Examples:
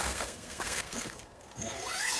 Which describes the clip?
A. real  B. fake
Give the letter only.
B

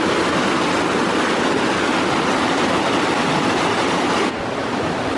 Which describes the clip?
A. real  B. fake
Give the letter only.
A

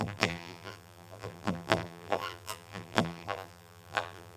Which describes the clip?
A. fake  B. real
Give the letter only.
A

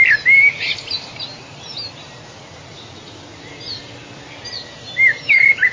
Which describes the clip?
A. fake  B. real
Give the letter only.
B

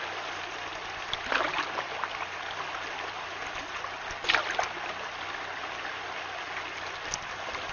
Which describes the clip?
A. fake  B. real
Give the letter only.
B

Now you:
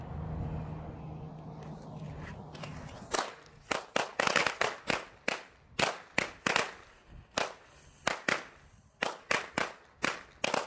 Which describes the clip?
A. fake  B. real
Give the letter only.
B